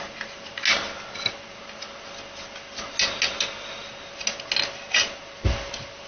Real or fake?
real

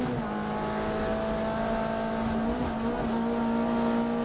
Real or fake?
real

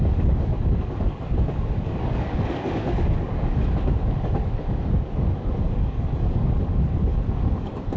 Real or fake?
fake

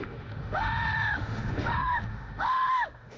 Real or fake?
fake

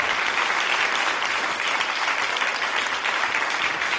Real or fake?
real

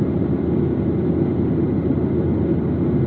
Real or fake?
real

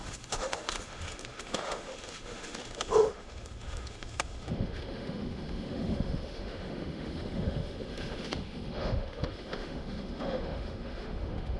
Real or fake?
fake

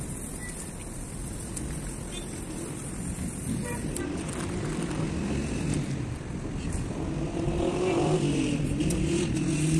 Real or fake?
real